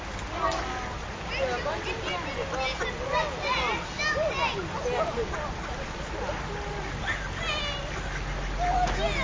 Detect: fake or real real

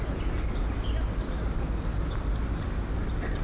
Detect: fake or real real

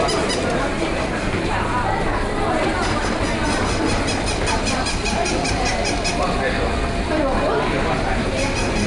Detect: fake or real real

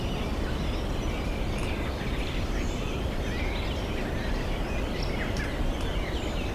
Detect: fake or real real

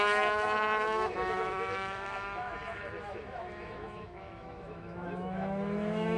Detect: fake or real fake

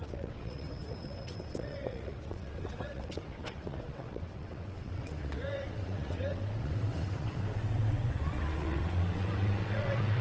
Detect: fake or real fake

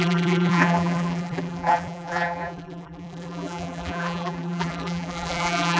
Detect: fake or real fake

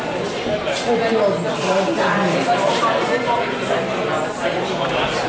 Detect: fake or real real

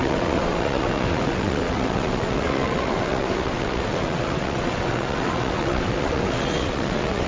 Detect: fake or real fake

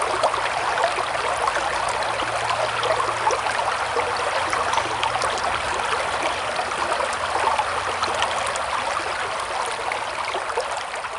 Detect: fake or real real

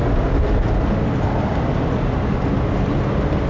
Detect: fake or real real